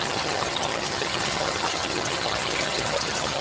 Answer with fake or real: fake